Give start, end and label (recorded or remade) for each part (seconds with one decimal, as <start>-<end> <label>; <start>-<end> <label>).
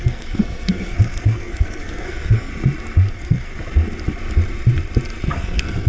0.0-2.5 remade; 2.5-3.1 recorded; 3.1-3.5 remade; 3.5-5.3 recorded; 5.3-5.9 remade